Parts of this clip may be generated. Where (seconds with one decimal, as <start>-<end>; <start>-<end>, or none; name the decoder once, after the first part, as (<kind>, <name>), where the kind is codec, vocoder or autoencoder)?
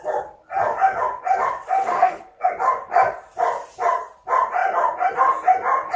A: 1.8-2.5 (codec, SNAC)